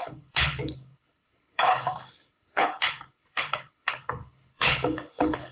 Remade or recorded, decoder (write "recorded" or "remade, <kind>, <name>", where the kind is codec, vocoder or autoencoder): remade, codec, HILCodec